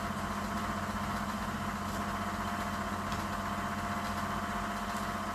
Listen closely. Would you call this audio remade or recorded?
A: recorded